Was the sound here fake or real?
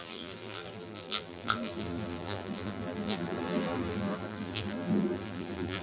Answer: fake